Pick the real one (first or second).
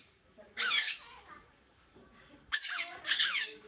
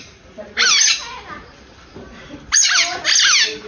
second